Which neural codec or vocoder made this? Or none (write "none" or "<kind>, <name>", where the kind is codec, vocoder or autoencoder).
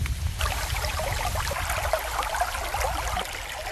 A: none